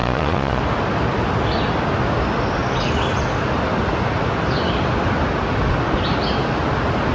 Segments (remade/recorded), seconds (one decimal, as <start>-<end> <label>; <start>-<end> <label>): 0.0-0.6 remade; 0.6-7.1 recorded